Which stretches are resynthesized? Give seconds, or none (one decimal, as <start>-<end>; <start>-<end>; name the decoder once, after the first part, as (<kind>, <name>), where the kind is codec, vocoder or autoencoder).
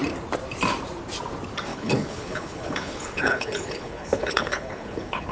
1.7-5.3 (codec, HILCodec)